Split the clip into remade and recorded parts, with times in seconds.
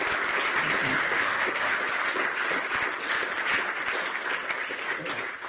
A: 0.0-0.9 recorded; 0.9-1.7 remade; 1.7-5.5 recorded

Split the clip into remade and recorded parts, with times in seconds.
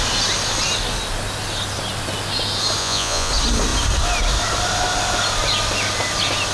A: 0.0-2.8 recorded; 2.8-3.3 remade; 3.3-6.5 recorded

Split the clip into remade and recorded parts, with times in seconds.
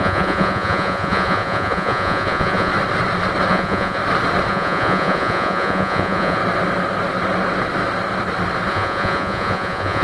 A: 0.0-2.7 remade; 2.7-3.5 recorded; 3.5-4.0 remade; 4.0-4.5 recorded; 4.5-6.4 remade; 6.4-8.7 recorded; 8.7-10.0 remade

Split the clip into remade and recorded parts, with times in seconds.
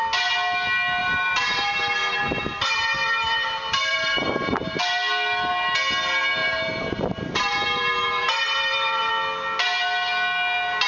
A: 0.0-1.0 recorded; 1.0-4.8 remade; 4.8-6.4 recorded; 6.4-9.1 remade; 9.1-10.9 recorded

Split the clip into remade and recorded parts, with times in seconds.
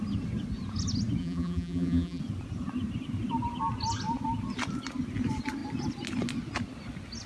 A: 0.0-1.2 recorded; 1.2-2.2 remade; 2.2-7.3 recorded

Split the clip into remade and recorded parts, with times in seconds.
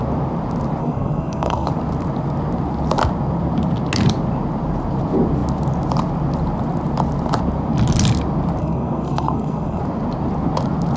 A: 0.0-0.8 recorded; 0.8-1.7 remade; 1.7-8.6 recorded; 8.6-9.8 remade; 9.8-11.0 recorded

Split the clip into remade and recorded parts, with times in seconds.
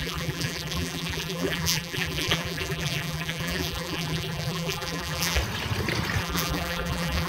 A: 0.0-5.4 remade; 5.4-6.2 recorded; 6.2-7.3 remade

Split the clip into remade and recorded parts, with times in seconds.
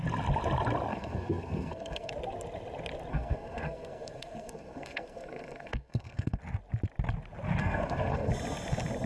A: 0.0-0.9 recorded; 0.9-2.1 remade; 2.1-3.1 recorded; 3.1-6.4 remade; 6.4-7.6 recorded; 7.6-8.3 remade; 8.3-9.1 recorded